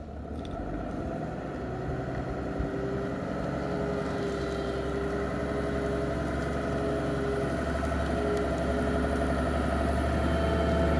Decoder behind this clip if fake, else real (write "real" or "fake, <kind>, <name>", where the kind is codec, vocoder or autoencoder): real